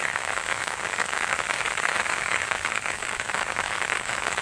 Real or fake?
fake